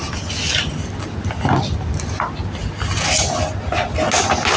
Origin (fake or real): real